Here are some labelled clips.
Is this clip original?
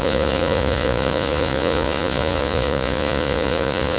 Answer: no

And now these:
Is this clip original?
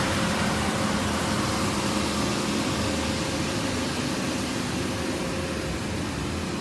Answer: yes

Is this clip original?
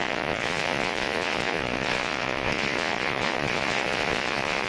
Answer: no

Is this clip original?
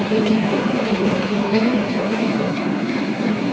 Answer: no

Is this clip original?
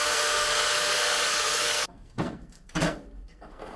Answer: no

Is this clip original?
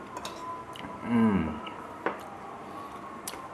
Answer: yes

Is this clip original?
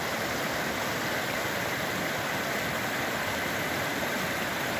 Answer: no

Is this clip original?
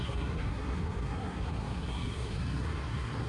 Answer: no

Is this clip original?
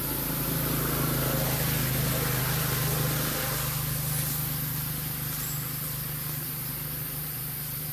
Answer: yes